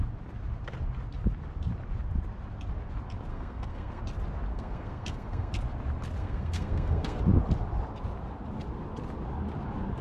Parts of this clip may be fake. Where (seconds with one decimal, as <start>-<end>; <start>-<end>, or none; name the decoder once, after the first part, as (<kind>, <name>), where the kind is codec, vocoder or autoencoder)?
3.3-4.0 (codec, SNAC); 4.5-5.5; 6.2-7.2